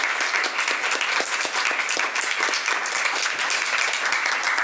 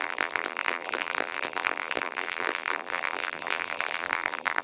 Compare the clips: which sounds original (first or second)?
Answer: first